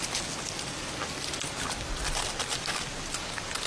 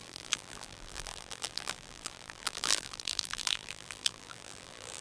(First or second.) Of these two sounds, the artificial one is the second